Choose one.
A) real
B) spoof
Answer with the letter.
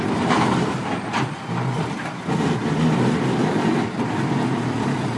B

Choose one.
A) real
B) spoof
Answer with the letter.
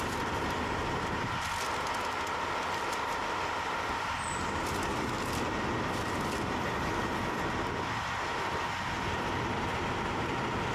A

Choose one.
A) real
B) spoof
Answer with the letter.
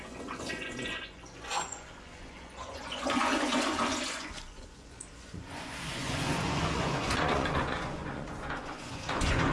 B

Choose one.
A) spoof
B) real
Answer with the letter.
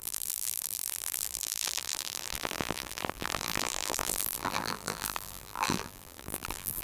A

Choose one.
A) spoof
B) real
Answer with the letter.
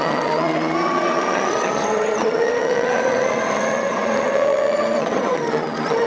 A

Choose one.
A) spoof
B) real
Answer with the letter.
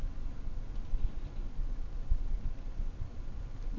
A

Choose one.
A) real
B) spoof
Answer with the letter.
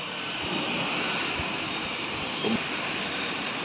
A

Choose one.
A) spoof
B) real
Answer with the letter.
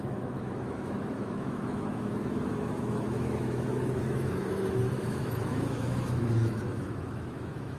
A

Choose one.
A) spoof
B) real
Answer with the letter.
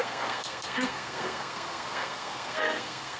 A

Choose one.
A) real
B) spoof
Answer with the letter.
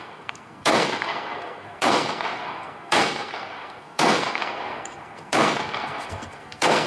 B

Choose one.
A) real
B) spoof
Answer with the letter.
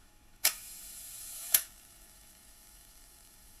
B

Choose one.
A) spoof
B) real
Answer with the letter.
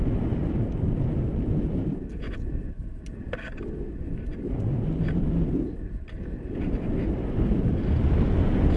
B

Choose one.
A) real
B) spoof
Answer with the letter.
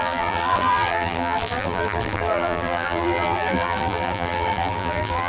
B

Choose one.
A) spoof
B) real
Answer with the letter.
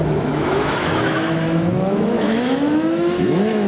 A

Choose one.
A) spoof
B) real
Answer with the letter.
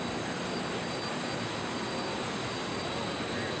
A